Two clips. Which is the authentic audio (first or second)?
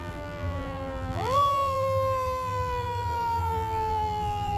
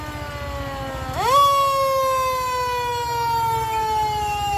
second